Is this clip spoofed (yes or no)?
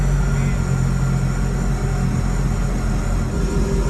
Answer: no